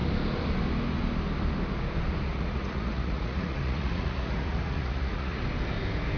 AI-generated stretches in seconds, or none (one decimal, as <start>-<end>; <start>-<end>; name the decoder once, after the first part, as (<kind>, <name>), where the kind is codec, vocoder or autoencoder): 2.3-5.4 (vocoder, Vocos)